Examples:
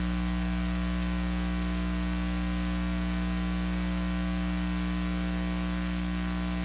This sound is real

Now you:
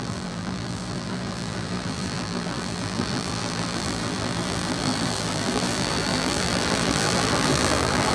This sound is fake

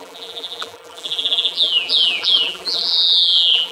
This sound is fake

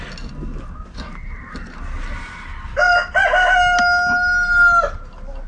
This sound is real